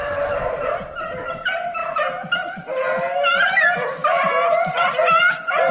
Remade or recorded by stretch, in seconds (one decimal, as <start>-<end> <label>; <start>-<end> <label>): 0.0-5.7 recorded